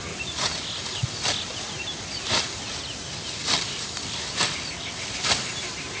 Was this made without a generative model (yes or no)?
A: yes